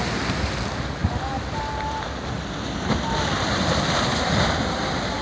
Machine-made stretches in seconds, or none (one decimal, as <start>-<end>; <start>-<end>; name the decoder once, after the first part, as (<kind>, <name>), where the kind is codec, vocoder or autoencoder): 0.0-1.0 (vocoder, BigVGAN v2); 2.3-5.2